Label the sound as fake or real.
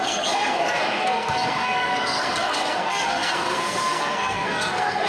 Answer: fake